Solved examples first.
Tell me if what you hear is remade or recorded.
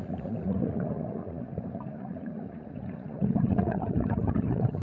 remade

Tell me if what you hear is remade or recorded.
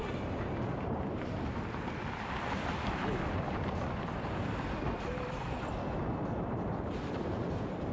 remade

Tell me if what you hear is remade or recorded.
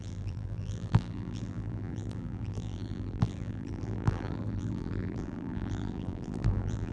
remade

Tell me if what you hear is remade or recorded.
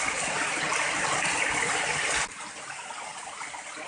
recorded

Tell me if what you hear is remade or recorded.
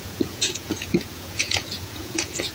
remade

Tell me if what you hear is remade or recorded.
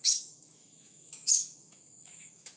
remade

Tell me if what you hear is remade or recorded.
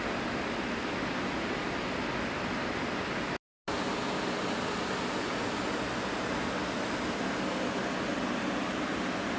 recorded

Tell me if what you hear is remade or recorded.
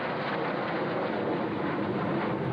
recorded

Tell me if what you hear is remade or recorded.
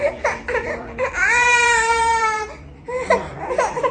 remade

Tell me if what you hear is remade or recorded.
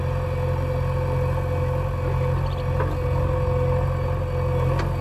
recorded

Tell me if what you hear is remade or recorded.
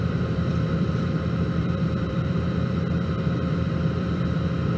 remade